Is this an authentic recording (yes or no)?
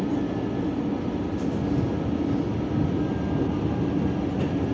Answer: yes